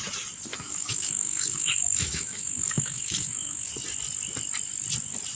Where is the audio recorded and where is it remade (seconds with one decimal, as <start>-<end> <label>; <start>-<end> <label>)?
0.0-0.5 recorded; 0.5-3.7 remade; 3.7-5.4 recorded